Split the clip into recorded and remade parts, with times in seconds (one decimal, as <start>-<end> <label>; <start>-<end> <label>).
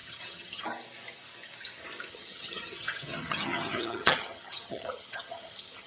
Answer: 0.0-0.6 remade; 0.6-2.1 recorded; 2.1-5.9 remade